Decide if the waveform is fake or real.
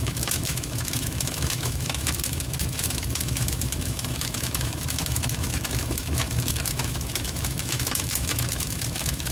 fake